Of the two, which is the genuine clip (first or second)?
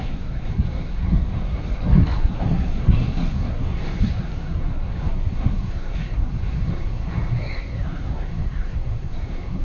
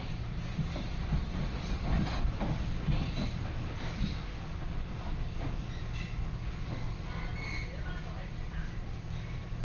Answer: second